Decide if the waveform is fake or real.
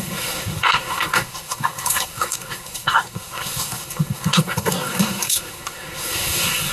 fake